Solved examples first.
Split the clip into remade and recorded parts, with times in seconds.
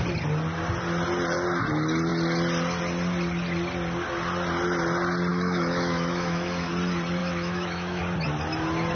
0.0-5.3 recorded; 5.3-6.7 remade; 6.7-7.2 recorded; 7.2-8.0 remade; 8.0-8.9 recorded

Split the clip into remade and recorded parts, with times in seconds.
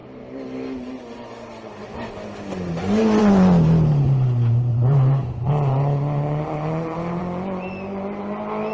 0.0-4.7 recorded; 4.7-7.2 remade; 7.2-8.7 recorded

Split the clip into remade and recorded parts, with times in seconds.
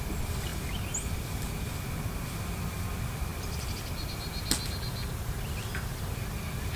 0.0-6.8 recorded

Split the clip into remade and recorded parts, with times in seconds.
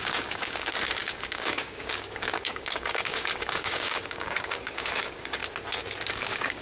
0.0-5.4 remade; 5.4-6.1 recorded; 6.1-6.6 remade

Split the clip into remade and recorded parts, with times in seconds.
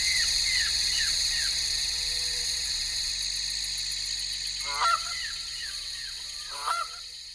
0.0-3.1 remade; 3.1-4.9 recorded; 4.9-7.3 remade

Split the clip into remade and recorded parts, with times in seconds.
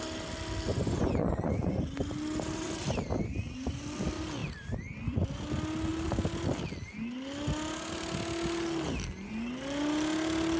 0.0-0.7 recorded; 0.7-1.8 remade; 1.8-10.6 recorded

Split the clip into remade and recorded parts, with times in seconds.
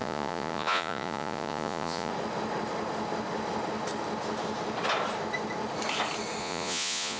0.0-2.1 remade; 2.1-6.4 recorded; 6.4-7.2 remade